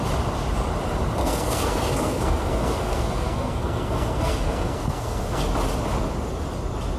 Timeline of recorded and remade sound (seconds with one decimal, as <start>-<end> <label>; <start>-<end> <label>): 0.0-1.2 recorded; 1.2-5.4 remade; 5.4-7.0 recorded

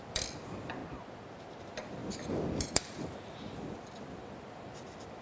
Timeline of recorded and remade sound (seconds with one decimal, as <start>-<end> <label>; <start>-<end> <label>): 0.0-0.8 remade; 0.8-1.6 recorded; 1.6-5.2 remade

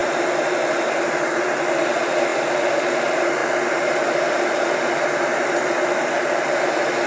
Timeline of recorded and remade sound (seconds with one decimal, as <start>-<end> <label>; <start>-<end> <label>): 0.0-7.1 recorded

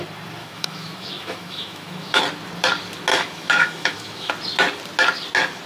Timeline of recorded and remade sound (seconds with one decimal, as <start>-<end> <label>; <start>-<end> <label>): 0.0-0.4 recorded; 0.4-2.2 remade; 2.2-3.1 recorded; 3.1-4.3 remade; 4.3-5.7 recorded

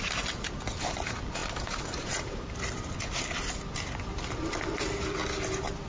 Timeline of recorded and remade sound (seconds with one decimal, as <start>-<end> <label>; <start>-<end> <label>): 0.0-1.4 recorded; 1.4-2.7 remade; 2.7-5.9 recorded

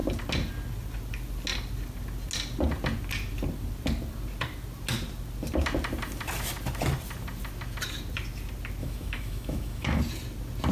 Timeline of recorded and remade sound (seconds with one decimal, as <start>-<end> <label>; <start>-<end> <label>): 0.0-8.8 recorded; 8.8-10.0 remade; 10.0-10.7 recorded